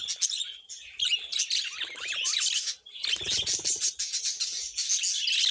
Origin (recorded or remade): recorded